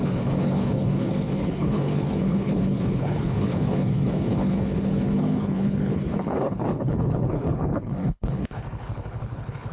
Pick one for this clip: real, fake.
fake